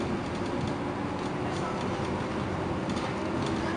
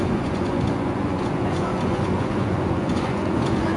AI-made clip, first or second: second